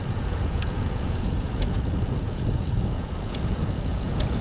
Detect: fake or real fake